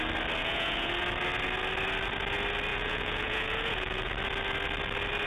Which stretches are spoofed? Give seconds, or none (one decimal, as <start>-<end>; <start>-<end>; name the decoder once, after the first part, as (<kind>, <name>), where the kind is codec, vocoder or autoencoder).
0.4-0.9 (vocoder, Vocos); 2.7-4.1